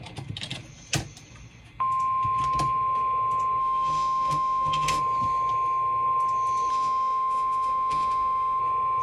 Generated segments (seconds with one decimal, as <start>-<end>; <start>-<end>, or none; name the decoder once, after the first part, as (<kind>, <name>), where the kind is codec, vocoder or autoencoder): 3.6-5.0 (autoencoder, DAC-VAE); 6.7-8.6